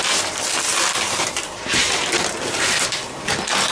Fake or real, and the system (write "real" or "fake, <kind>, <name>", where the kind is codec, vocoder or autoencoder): real